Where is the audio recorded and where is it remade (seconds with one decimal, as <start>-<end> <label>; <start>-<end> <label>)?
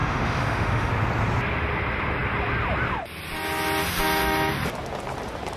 0.0-0.9 remade; 0.9-5.6 recorded